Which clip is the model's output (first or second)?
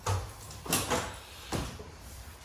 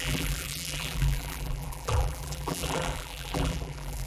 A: second